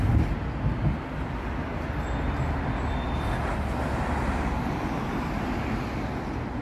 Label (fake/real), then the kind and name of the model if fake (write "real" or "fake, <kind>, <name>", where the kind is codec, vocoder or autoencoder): real